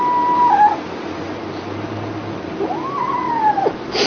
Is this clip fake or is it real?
real